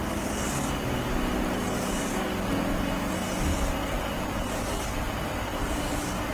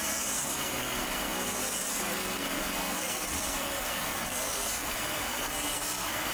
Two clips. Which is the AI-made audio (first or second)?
second